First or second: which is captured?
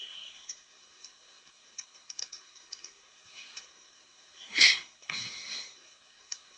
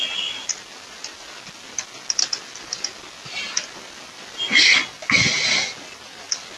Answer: second